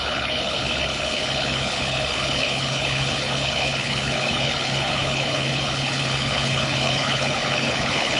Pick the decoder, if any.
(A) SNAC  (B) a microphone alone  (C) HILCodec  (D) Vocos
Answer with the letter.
C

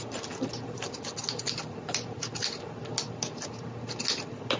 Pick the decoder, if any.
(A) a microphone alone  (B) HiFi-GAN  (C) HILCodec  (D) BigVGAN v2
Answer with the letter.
A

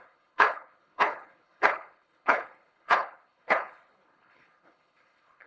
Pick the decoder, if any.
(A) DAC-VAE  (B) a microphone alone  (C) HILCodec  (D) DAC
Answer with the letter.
C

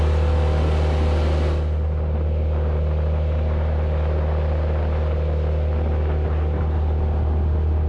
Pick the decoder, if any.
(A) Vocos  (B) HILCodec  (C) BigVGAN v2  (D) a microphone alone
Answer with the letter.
D